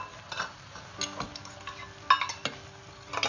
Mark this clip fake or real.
real